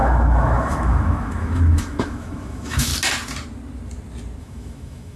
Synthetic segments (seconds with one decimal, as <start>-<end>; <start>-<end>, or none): 0.0-2.9; 4.4-5.2